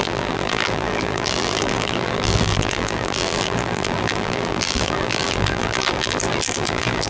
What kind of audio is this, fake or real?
fake